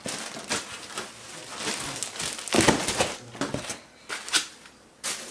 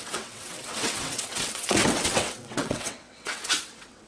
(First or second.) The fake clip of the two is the second